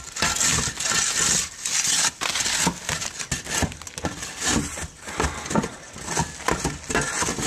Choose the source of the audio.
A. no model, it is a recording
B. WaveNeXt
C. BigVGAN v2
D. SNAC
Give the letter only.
A